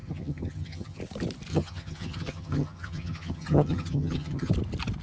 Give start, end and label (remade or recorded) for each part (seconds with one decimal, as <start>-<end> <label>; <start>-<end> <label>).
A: 0.0-1.0 remade; 1.0-1.5 recorded; 1.5-4.5 remade; 4.5-5.0 recorded